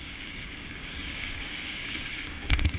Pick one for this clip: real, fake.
fake